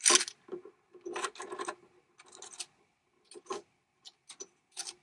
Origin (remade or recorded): recorded